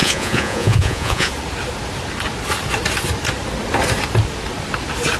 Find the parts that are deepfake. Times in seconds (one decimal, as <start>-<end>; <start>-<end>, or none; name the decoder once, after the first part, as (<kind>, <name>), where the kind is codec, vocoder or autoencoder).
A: 0.0-1.3 (vocoder, Vocos)